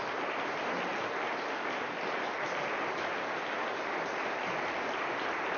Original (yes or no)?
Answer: yes